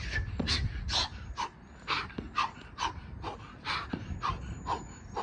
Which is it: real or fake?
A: real